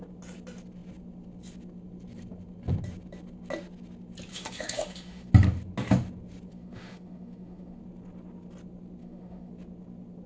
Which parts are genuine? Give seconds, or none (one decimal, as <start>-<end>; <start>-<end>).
0.0-4.3; 5.3-6.5; 7.8-9.0; 9.5-10.3